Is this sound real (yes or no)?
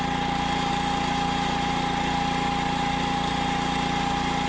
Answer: yes